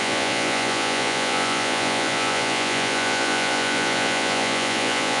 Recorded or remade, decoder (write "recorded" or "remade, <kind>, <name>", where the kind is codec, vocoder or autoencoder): remade, vocoder, Vocos